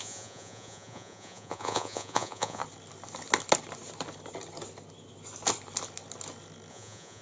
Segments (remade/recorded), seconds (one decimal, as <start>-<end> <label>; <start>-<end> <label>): 0.0-2.6 remade; 2.6-6.7 recorded; 6.7-7.2 remade